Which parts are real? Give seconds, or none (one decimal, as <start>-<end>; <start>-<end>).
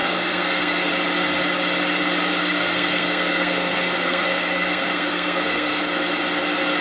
0.9-2.4; 5.8-6.8